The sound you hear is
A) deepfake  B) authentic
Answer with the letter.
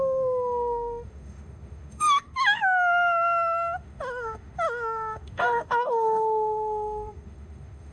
A